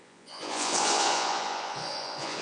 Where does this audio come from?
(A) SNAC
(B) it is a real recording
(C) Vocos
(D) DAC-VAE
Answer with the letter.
C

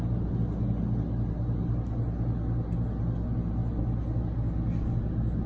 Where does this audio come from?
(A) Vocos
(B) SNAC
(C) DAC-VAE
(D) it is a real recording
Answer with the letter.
D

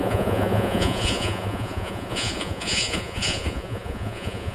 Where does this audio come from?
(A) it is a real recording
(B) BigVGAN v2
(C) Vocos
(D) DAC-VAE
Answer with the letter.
C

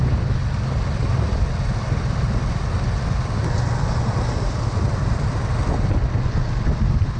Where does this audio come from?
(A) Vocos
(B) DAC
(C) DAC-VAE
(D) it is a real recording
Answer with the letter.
D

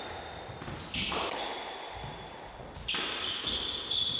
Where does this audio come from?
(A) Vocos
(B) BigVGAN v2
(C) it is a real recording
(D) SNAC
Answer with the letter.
C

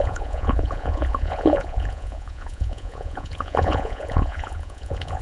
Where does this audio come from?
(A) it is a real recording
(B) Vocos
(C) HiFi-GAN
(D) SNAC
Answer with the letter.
B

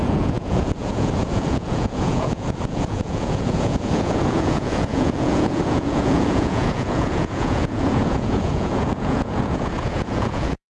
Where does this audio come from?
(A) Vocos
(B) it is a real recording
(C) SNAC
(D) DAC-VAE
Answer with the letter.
A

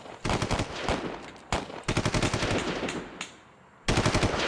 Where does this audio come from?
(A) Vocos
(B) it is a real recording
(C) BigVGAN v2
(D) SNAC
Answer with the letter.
B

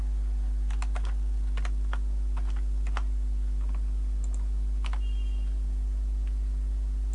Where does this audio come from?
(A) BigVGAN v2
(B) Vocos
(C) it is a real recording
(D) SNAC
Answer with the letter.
C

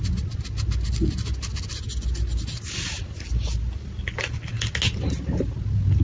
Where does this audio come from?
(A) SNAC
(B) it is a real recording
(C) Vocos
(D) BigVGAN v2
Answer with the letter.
B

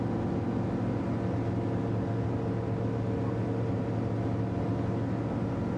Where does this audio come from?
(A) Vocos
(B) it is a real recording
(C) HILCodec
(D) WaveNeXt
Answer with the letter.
B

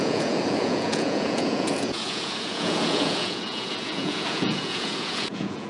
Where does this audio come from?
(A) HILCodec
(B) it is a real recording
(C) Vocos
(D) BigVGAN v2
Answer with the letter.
C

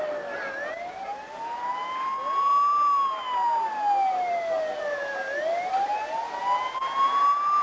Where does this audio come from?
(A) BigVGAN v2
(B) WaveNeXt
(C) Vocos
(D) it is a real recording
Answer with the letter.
D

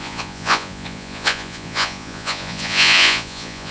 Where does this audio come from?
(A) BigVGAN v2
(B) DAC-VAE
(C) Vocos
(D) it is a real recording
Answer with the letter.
C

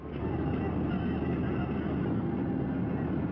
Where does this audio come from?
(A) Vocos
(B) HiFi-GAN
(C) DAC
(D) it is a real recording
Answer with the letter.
D